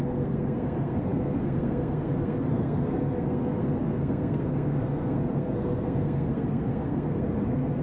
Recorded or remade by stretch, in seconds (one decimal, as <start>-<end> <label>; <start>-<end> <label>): 0.0-7.8 remade